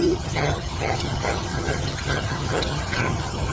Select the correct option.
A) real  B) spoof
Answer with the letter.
B